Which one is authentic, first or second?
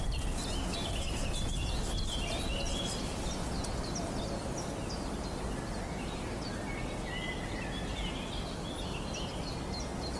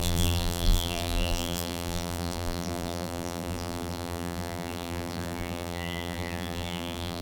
first